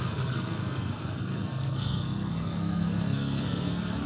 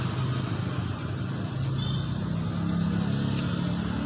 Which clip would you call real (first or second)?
second